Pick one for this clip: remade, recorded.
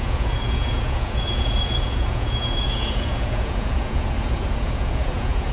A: remade